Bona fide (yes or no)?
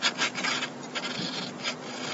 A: yes